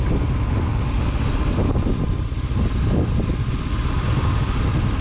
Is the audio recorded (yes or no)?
yes